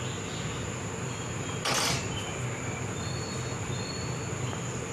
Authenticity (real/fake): real